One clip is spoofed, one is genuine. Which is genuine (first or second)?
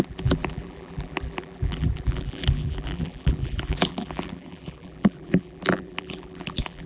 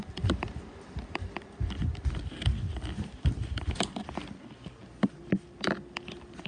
second